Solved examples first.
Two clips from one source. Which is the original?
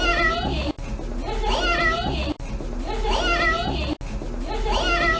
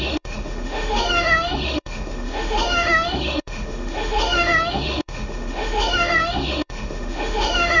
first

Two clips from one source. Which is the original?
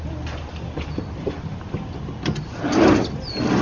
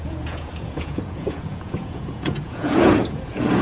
first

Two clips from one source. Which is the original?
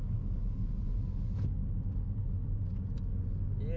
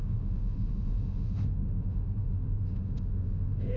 first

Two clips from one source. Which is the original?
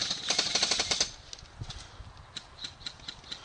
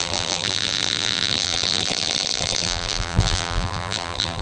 first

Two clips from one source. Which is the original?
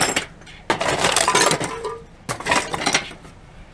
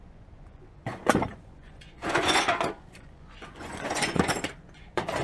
first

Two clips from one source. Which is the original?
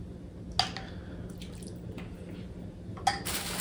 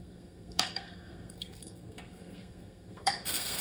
first